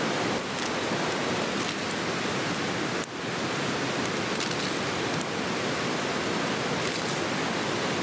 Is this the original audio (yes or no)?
yes